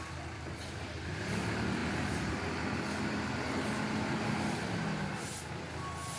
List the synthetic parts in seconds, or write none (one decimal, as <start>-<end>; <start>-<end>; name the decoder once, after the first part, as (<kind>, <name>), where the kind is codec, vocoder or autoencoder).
none